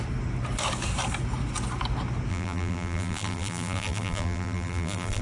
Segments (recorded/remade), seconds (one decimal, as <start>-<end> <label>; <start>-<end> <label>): 0.0-2.3 recorded; 2.3-5.2 remade